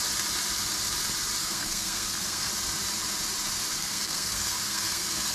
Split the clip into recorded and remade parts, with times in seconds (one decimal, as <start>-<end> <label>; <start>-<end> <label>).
0.0-1.4 recorded; 1.4-2.5 remade; 2.5-3.8 recorded; 3.8-5.3 remade